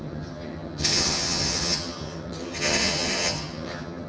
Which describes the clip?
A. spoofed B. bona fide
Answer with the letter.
A